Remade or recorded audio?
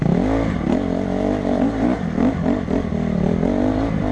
remade